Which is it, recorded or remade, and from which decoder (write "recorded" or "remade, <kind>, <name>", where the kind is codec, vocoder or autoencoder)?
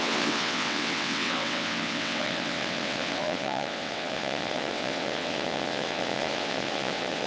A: remade, vocoder, WaveNeXt